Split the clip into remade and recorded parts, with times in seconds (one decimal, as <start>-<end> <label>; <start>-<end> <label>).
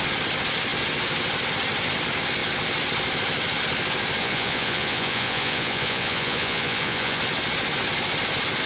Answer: 0.0-4.2 recorded; 4.2-7.2 remade; 7.2-8.7 recorded